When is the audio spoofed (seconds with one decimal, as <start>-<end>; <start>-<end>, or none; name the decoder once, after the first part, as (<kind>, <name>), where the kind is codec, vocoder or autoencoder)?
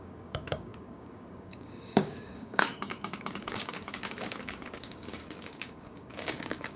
0.0-6.8 (codec, DAC)